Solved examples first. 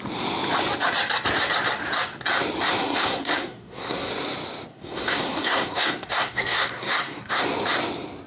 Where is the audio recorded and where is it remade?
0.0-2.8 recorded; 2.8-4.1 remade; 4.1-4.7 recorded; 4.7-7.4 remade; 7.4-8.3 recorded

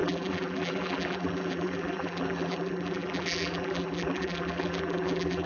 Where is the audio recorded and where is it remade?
0.0-5.5 remade

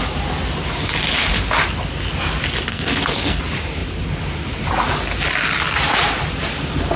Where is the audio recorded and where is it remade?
0.0-2.7 recorded; 2.7-3.4 remade; 3.4-7.0 recorded

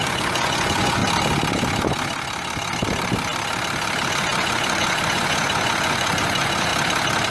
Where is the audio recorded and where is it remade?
0.0-1.0 remade; 1.0-4.1 recorded; 4.1-6.7 remade; 6.7-7.3 recorded